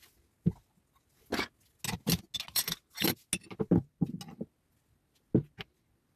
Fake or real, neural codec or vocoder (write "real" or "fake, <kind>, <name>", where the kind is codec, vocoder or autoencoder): real